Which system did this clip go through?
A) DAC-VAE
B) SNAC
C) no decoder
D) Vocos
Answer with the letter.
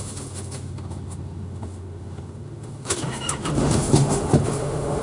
A